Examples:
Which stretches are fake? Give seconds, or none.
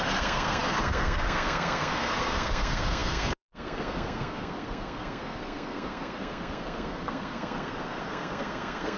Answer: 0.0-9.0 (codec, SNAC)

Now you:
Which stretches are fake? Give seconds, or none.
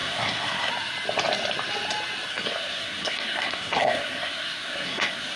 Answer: 0.0-0.7 (codec, SNAC); 2.3-5.4